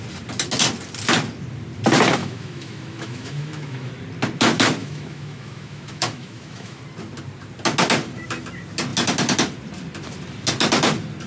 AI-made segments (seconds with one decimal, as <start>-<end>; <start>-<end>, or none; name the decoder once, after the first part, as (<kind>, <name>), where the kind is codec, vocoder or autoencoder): 2.2-3.9 (autoencoder, DAC-VAE); 4.8-6.8